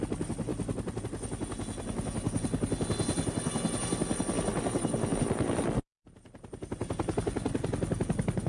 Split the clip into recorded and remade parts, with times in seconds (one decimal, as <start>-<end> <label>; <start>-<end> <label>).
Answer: 0.0-8.5 recorded